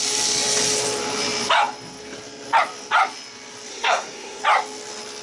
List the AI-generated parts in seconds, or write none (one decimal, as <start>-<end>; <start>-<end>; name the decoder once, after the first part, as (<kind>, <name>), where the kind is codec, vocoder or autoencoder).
3.7-4.4 (codec, SNAC)